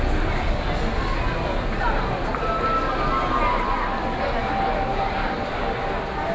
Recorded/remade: recorded